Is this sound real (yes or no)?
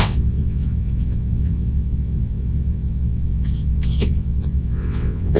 no